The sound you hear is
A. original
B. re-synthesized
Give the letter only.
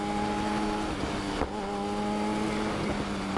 A